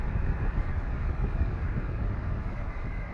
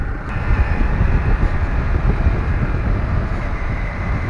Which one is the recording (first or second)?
second